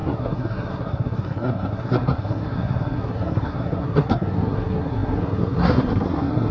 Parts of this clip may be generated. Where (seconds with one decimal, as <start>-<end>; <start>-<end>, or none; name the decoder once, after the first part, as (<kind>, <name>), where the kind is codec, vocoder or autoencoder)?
0.0-6.5 (codec, SNAC)